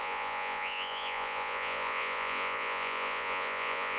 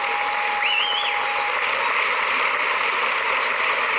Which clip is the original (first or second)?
second